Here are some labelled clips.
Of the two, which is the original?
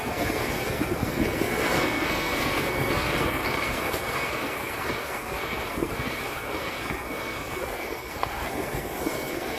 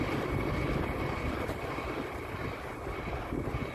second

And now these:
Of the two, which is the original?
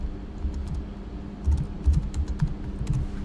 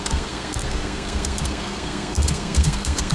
first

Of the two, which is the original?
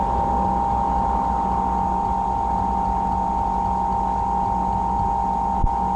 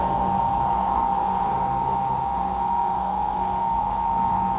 first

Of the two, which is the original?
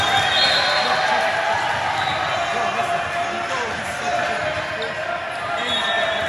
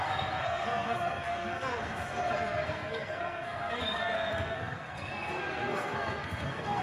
first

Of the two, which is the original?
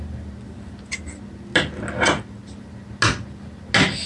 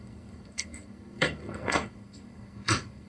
first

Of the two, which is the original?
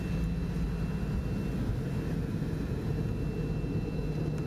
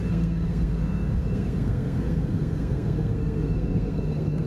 first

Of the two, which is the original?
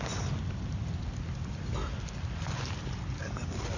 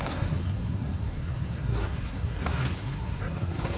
first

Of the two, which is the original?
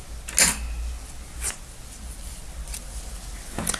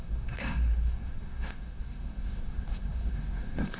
first